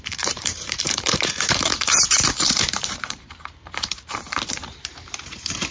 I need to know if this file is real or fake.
fake